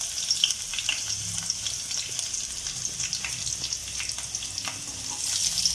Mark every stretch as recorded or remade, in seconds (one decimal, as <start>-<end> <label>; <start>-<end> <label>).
0.0-5.7 recorded